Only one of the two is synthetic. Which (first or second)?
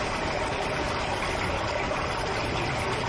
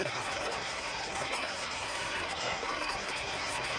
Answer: second